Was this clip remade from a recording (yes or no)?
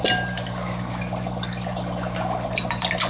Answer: no